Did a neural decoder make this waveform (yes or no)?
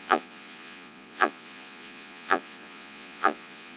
yes